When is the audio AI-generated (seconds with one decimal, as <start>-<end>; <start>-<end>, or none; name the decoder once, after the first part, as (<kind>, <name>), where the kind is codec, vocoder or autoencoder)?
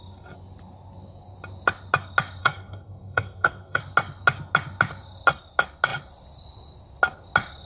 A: 2.4-3.8 (codec, SNAC)